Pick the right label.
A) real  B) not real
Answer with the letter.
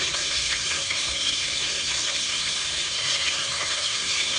B